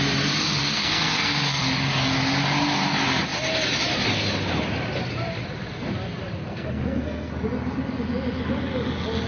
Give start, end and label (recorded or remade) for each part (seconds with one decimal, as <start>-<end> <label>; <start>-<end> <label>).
0.0-0.6 recorded; 0.6-1.6 remade; 1.6-6.4 recorded; 6.4-7.3 remade; 7.3-9.3 recorded